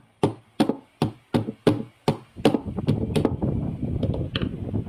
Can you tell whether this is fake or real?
real